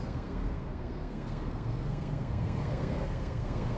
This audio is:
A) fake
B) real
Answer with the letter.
A